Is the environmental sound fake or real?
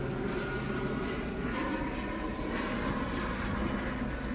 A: real